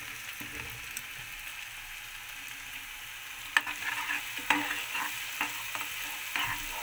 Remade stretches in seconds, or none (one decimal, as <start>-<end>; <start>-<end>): none